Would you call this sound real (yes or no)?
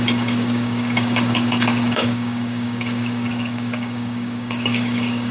no